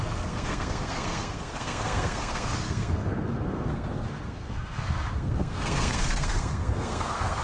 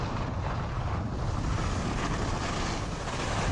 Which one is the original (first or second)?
second